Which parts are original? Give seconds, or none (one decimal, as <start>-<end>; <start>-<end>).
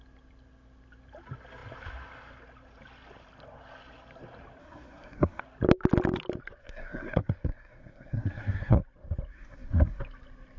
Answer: 0.0-4.6; 5.4-6.6; 8.8-9.3; 10.0-10.6